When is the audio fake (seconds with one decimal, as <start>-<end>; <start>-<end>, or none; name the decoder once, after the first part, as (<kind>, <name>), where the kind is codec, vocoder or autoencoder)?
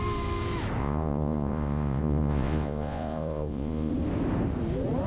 0.8-3.9 (vocoder, Vocos)